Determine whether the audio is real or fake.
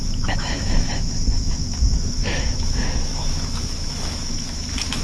fake